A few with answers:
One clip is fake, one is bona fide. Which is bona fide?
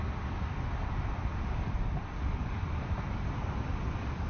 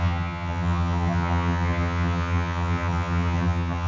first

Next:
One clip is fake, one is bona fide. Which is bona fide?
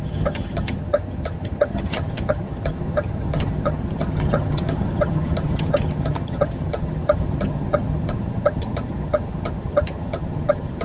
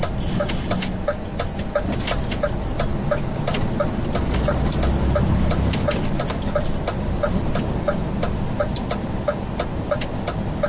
second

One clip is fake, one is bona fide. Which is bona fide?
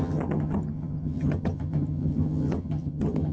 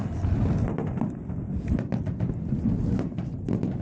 second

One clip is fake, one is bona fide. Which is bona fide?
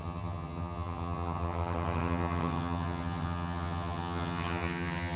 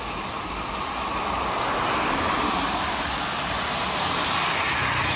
second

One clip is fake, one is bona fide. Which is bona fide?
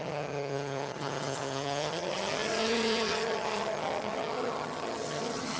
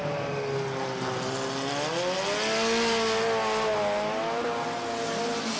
second